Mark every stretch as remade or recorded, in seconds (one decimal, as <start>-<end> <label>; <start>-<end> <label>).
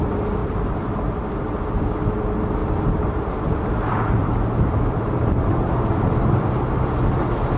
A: 0.0-0.4 recorded; 0.4-1.6 remade; 1.6-2.6 recorded; 2.6-6.2 remade; 6.2-7.6 recorded